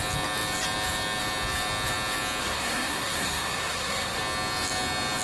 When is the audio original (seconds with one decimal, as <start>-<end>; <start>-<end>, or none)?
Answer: 0.0-2.4; 4.2-5.2

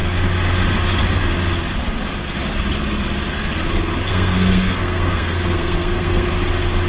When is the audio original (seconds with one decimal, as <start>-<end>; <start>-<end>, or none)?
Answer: 0.0-4.1; 6.3-6.9